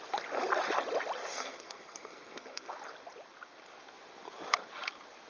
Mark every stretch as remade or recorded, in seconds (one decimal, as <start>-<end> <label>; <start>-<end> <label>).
0.0-1.2 recorded; 1.2-2.7 remade; 2.7-5.3 recorded